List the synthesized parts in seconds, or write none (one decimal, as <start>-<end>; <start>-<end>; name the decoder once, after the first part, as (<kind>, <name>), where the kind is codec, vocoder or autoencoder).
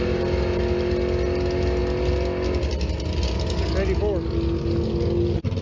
none